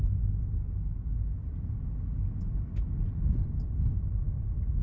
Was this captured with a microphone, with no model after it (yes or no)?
yes